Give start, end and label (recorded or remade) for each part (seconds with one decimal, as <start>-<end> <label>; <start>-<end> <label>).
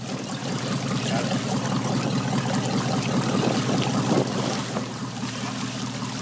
0.0-6.2 recorded